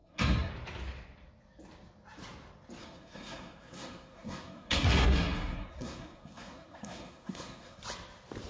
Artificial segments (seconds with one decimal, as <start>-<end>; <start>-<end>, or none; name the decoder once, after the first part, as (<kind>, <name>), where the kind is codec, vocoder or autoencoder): 0.0-0.5 (codec, SNAC); 2.8-7.8